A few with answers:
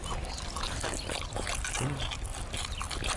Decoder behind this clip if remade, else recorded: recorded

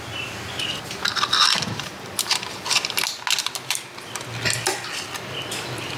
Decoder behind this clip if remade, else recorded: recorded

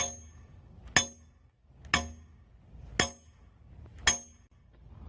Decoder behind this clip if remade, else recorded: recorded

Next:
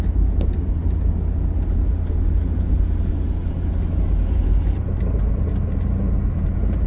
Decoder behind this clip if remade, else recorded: recorded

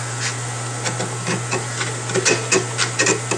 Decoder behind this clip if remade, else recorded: recorded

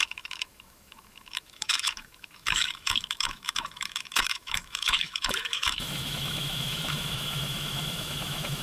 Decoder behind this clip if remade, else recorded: remade, autoencoder, DAC-VAE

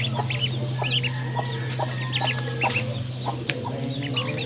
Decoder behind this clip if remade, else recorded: recorded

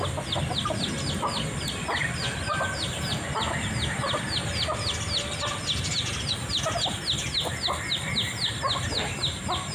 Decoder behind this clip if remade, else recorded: recorded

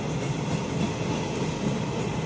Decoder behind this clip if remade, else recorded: recorded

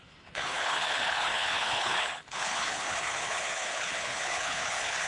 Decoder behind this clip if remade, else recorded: remade, codec, HILCodec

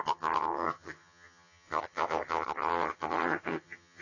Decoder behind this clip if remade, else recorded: remade, vocoder, HiFi-GAN